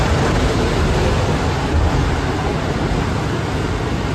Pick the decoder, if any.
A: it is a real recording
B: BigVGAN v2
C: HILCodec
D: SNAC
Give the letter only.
A